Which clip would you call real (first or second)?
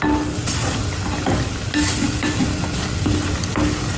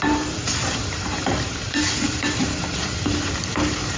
first